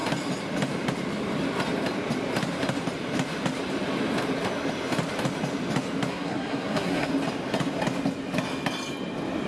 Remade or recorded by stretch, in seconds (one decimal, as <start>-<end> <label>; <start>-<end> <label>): 0.0-6.1 recorded; 6.1-7.1 remade; 7.1-9.5 recorded